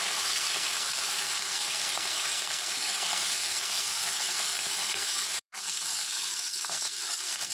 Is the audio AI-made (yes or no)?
yes